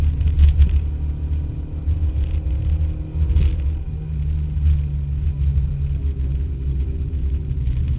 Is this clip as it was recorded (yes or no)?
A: yes